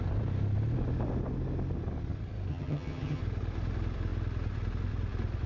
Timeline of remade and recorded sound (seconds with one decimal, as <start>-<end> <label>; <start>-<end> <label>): 0.0-2.5 recorded; 2.5-3.2 remade; 3.2-5.5 recorded